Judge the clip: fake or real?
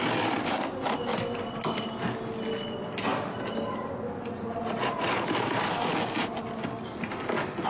real